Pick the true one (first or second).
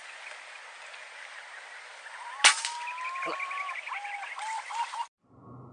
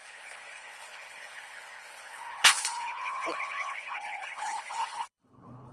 first